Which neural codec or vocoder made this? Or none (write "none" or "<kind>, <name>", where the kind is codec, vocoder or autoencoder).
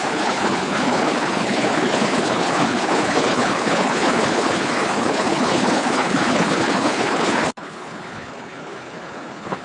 codec, HILCodec